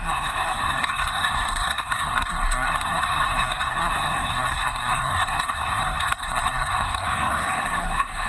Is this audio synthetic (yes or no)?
yes